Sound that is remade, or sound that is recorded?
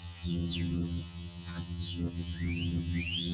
remade